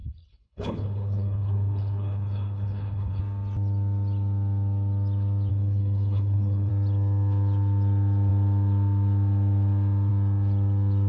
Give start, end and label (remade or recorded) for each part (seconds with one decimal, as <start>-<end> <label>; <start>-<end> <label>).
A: 0.0-3.2 remade; 3.2-5.5 recorded; 5.5-6.7 remade; 6.7-11.1 recorded